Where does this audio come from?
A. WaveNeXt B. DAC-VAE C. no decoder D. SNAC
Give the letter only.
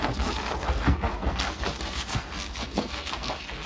D